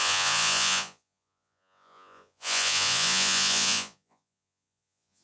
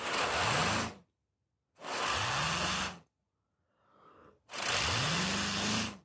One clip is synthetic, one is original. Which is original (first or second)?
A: second